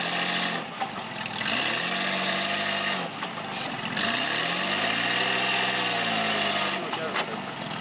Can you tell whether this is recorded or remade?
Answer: recorded